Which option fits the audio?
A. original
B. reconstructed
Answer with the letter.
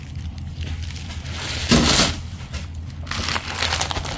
A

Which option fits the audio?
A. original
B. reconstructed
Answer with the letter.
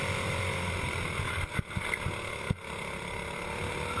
A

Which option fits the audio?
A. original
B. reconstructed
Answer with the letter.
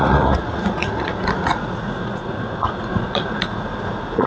B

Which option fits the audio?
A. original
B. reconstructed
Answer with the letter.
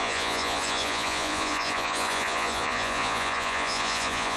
B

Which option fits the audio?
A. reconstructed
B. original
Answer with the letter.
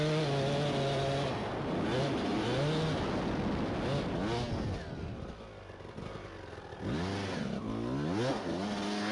B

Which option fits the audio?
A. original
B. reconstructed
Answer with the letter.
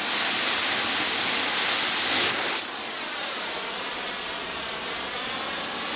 A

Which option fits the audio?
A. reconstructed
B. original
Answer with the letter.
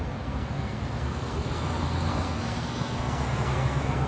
A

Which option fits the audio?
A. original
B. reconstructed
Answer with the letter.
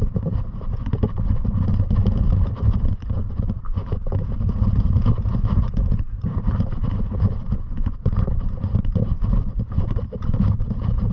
B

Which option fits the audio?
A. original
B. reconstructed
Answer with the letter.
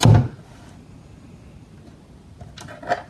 A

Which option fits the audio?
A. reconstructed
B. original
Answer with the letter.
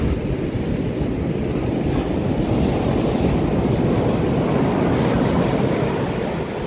B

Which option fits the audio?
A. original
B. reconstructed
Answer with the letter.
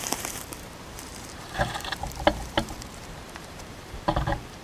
B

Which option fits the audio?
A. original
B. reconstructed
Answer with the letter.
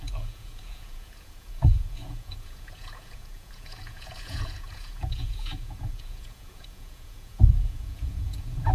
B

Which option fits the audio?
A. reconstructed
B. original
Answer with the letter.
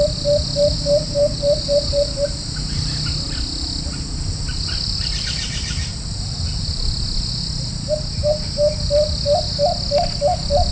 B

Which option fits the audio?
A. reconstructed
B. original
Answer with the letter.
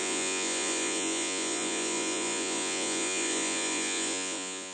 A